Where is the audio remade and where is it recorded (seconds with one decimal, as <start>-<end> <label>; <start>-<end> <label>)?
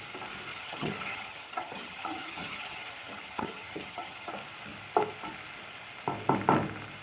0.0-0.5 recorded; 0.5-4.3 remade; 4.3-7.0 recorded